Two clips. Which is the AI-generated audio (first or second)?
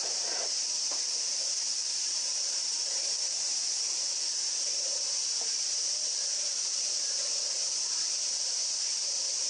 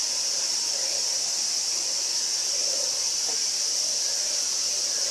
first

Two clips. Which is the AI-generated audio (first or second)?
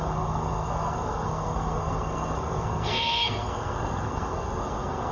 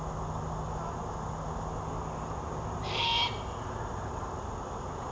first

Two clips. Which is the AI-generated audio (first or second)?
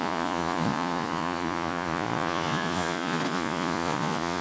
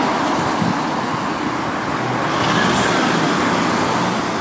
first